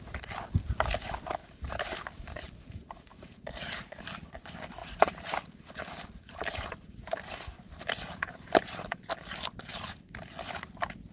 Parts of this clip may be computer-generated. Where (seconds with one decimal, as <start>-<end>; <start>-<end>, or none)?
1.4-3.9; 4.8-9.1; 9.7-10.2